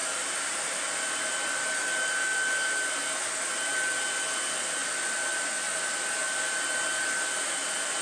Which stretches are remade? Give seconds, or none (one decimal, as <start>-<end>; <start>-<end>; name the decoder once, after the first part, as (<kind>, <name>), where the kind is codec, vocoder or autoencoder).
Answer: 0.0-1.3 (vocoder, BigVGAN v2); 4.8-6.5